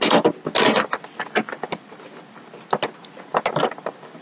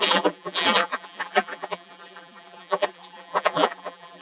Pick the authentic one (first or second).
first